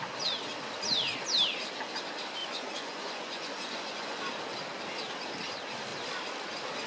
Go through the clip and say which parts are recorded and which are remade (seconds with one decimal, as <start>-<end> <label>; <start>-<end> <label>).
0.0-2.4 recorded; 2.4-4.2 remade; 4.2-6.9 recorded